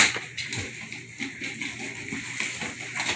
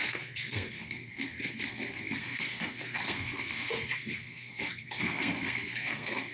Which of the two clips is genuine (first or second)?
first